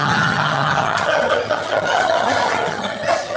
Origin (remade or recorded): remade